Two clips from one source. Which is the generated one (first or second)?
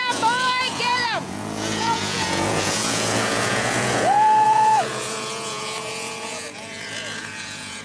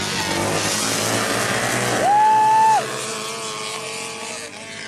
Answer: first